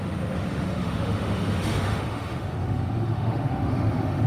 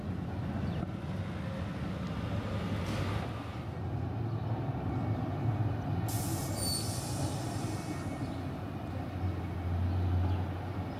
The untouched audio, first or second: second